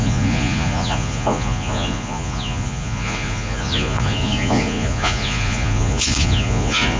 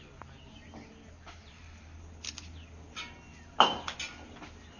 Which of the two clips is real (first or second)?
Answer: second